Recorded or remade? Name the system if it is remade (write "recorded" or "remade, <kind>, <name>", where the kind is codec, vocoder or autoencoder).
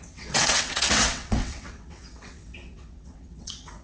remade, vocoder, WaveNeXt